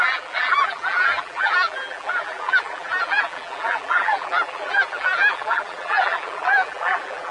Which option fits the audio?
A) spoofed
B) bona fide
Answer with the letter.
A